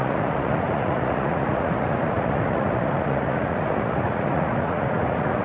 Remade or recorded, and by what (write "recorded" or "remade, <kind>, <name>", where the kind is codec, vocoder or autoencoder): remade, vocoder, Vocos